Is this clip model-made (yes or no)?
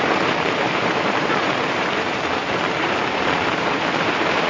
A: yes